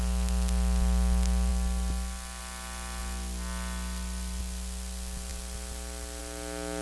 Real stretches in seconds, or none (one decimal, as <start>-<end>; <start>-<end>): 0.0-6.8